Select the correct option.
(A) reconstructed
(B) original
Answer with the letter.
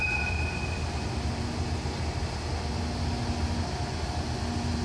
B